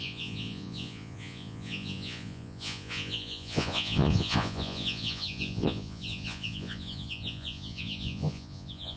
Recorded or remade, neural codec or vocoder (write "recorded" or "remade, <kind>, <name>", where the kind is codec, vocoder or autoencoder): remade, vocoder, Vocos